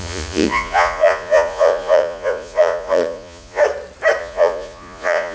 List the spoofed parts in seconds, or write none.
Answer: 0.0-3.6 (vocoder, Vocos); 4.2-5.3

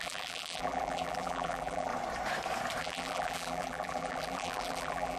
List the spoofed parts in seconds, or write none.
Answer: 0.0-1.9 (vocoder, BigVGAN v2); 2.8-5.2

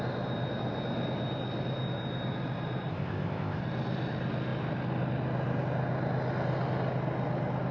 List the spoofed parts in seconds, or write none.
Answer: 2.9-3.6 (codec, ZipCodec)